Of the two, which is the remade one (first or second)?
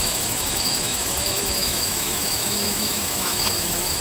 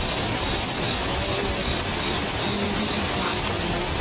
first